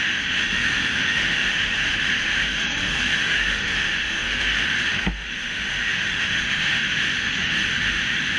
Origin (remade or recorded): remade